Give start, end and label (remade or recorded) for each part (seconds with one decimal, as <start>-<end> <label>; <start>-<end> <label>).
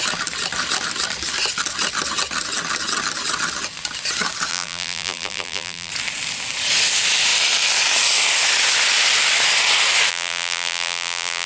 0.0-4.5 recorded; 4.5-5.9 remade; 5.9-10.1 recorded; 10.1-11.5 remade